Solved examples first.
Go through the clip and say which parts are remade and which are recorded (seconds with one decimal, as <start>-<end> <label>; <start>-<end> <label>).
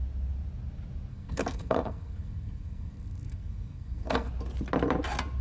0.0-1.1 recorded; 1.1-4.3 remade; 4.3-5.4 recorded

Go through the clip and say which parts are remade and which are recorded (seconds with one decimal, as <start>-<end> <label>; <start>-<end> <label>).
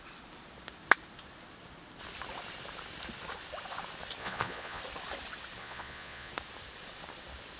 0.0-4.2 recorded; 4.2-4.8 remade; 4.8-5.6 recorded; 5.6-6.3 remade; 6.3-7.6 recorded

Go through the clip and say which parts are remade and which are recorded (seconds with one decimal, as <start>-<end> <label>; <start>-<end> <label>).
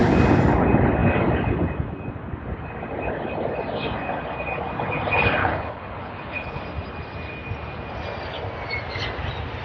0.0-5.4 recorded; 5.4-6.6 remade; 6.6-9.6 recorded